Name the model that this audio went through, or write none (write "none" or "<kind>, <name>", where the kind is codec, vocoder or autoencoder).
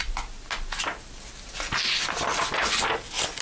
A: none